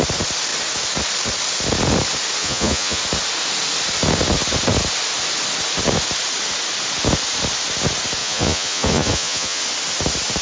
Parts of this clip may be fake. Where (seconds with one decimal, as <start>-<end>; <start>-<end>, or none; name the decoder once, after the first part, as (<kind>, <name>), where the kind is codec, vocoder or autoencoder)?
2.4-3.0 (vocoder, Vocos); 8.2-9.6